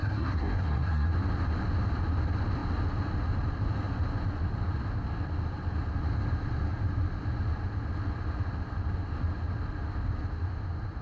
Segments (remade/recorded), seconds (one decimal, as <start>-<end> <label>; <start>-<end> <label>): 0.0-1.1 remade; 1.1-11.0 recorded